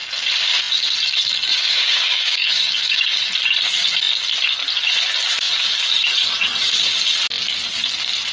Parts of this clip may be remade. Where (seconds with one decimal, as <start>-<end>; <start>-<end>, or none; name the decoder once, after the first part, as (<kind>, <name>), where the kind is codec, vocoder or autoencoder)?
1.5-3.2 (codec, DAC)